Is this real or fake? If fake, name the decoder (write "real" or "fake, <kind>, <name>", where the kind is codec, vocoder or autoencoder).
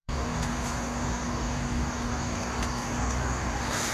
fake, codec, DAC